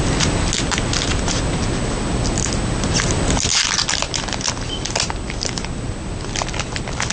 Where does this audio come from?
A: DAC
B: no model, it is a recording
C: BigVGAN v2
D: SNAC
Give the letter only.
B